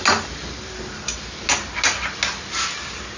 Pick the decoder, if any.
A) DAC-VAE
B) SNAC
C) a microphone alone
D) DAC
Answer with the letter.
C